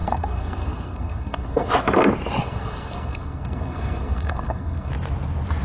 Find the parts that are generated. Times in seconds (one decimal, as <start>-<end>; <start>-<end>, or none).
0.0-1.7; 2.4-4.9